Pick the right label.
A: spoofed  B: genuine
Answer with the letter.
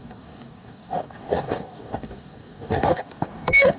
A